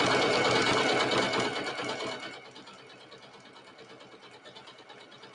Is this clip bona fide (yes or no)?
yes